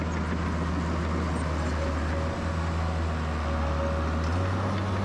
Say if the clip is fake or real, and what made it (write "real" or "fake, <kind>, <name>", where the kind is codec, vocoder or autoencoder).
real